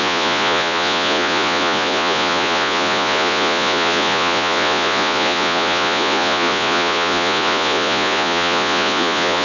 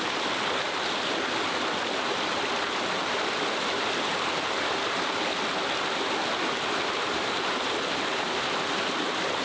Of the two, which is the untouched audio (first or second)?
second